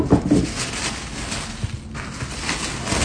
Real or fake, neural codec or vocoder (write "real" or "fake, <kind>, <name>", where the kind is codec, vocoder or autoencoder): real